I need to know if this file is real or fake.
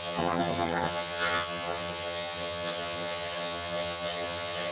fake